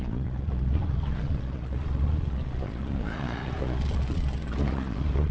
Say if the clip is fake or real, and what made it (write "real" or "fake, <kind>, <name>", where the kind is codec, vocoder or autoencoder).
fake, vocoder, Vocos